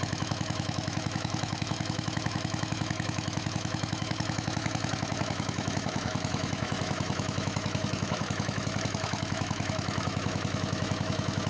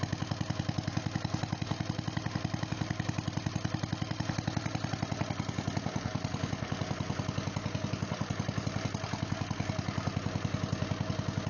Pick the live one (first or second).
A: second